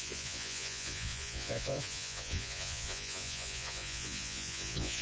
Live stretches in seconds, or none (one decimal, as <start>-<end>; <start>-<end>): none